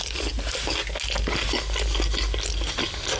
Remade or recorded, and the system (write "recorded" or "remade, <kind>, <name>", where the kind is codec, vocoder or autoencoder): recorded